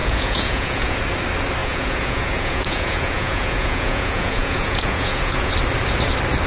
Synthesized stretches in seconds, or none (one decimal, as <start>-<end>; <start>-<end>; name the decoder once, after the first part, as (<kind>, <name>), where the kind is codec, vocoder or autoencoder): 0.0-1.0 (vocoder, Vocos); 1.6-5.5

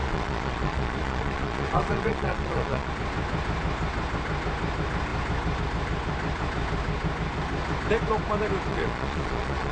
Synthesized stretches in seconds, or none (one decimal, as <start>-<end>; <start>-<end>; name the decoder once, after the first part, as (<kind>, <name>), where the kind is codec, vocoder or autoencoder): 0.0-2.9 (vocoder, Vocos); 8.7-9.7

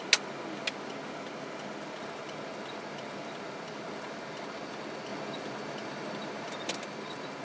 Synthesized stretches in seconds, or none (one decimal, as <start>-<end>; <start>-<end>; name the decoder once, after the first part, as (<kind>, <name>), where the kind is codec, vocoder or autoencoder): none